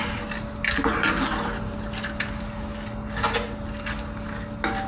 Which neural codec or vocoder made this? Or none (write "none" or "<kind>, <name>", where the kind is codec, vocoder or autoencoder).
none